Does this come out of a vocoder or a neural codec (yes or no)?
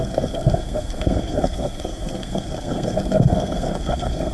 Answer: yes